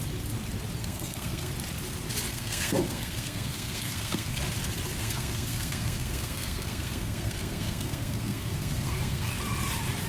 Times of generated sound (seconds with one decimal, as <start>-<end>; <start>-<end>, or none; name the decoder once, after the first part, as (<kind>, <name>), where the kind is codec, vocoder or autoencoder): 0.8-1.5 (codec, SNAC); 2.3-4.4; 5.0-9.3